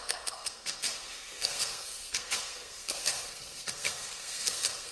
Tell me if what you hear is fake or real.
fake